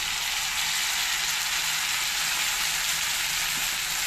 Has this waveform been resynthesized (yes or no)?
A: no